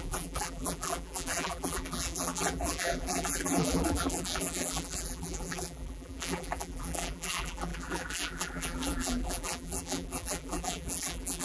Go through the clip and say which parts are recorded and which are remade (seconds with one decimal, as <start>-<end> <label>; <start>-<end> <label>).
0.0-11.4 remade